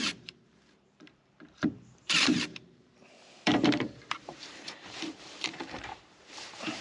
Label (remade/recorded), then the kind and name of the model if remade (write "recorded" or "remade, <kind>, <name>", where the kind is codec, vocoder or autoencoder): remade, vocoder, BigVGAN v2